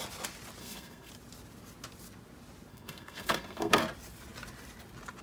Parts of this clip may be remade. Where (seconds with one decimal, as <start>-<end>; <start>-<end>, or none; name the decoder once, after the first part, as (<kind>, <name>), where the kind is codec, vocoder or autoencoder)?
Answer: 0.6-1.1 (codec, SNAC); 2.7-3.8